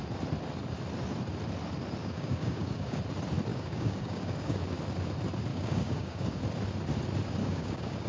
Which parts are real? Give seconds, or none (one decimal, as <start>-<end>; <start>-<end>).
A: 0.0-2.0; 3.0-3.5; 4.6-5.5; 6.4-7.4